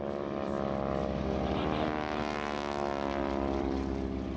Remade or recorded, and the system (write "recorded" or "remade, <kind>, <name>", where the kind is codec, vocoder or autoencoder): remade, vocoder, BigVGAN v2